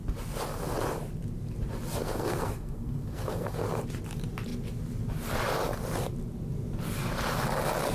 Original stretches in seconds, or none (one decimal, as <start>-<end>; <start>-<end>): 0.0-2.0; 3.8-7.9